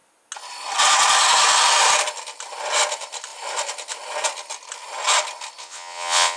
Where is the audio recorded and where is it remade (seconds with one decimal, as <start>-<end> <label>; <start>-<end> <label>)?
0.0-5.6 recorded; 5.6-6.4 remade